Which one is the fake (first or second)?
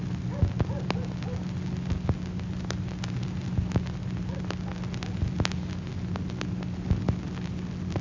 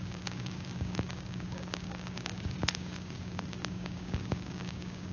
second